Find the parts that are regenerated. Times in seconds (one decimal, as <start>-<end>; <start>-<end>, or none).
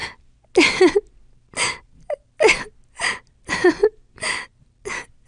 none